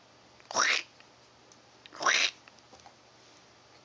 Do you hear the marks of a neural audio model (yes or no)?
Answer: no